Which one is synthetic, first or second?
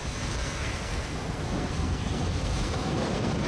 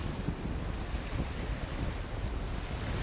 first